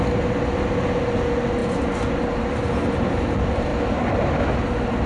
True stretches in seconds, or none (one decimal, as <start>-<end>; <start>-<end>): 0.0-5.1